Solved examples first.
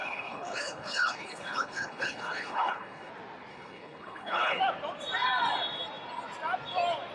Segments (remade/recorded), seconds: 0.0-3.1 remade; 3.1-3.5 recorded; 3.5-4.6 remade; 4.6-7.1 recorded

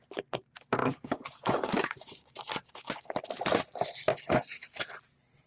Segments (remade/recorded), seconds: 0.0-0.8 recorded; 0.8-3.3 remade; 3.3-4.1 recorded; 4.1-4.8 remade; 4.8-5.5 recorded

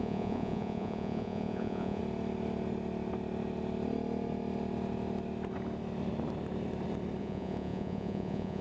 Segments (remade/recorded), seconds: 0.0-2.0 remade; 2.0-7.2 recorded; 7.2-8.6 remade